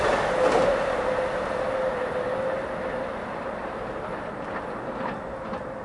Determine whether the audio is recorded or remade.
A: recorded